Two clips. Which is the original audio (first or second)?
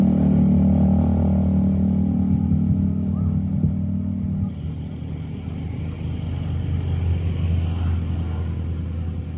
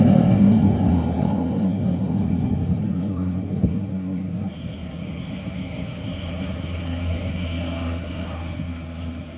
first